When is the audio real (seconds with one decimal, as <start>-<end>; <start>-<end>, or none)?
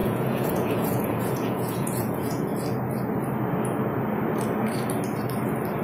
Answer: 2.5-5.8